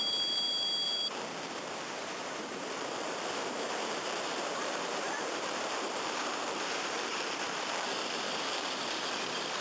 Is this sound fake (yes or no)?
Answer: yes